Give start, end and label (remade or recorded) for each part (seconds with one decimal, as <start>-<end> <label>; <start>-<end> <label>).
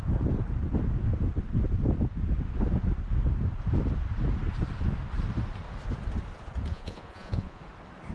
0.0-6.7 recorded; 6.7-7.6 remade; 7.6-8.1 recorded